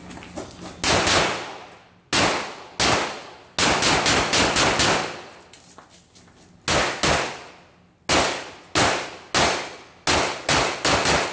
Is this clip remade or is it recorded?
recorded